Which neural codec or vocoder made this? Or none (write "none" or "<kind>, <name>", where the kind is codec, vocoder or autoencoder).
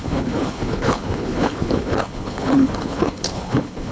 codec, HILCodec